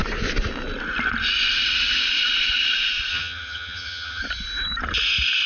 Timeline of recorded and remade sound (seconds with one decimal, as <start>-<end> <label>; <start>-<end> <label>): 0.0-3.1 recorded; 3.1-4.2 remade; 4.2-5.5 recorded